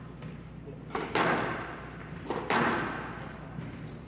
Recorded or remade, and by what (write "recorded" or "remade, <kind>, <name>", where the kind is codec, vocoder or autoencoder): recorded